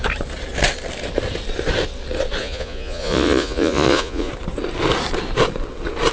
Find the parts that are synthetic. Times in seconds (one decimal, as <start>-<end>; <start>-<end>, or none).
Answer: 2.4-4.3